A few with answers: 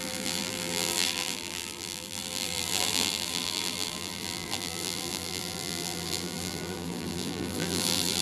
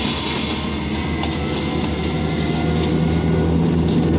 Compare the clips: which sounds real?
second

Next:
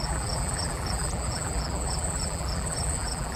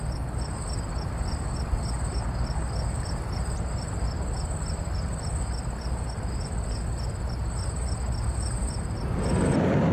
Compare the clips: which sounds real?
second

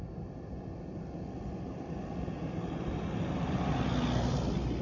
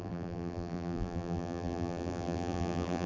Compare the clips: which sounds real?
first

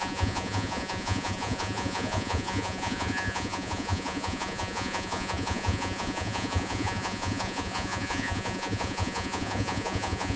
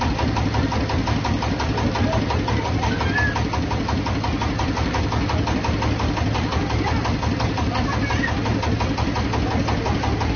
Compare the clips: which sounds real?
second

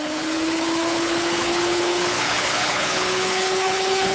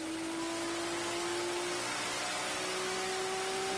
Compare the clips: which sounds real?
second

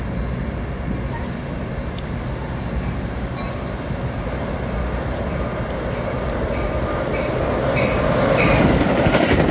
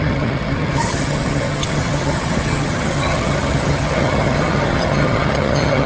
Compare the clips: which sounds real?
first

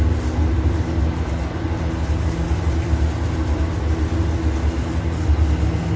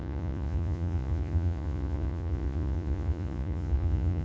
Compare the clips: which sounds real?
first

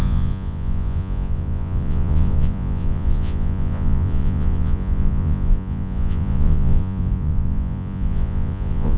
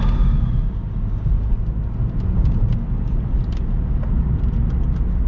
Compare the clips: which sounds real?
second